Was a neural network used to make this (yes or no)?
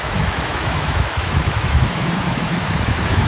yes